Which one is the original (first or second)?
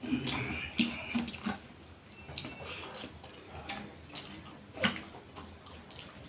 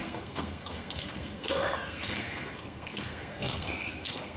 first